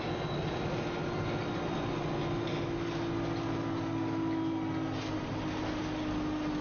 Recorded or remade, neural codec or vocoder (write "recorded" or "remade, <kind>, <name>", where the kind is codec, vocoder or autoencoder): recorded